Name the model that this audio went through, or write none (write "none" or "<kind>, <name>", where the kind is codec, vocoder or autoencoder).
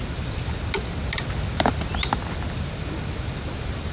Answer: none